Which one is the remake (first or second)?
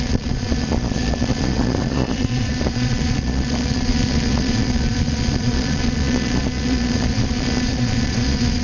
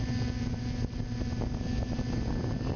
first